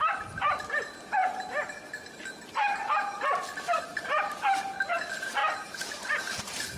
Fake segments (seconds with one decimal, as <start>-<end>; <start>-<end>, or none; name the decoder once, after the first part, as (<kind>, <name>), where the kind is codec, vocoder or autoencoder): 5.4-6.8 (vocoder, BigVGAN v2)